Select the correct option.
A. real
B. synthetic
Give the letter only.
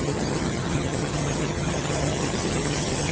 B